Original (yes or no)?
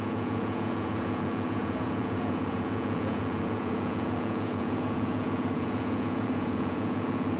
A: no